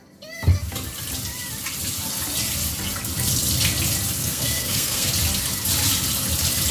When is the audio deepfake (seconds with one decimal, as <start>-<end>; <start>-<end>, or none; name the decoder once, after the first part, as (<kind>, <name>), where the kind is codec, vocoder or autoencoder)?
4.2-5.1 (codec, SNAC)